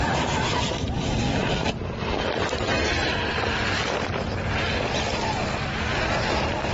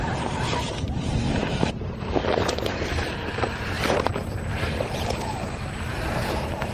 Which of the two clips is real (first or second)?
first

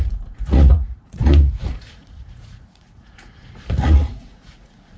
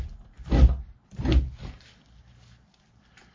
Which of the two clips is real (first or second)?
second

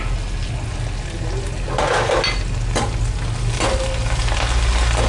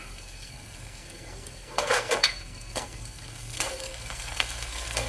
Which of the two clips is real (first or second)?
first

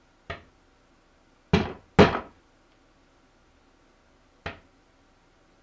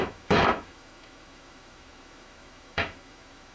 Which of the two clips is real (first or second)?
first